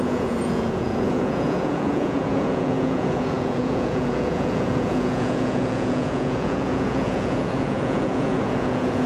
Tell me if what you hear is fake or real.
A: fake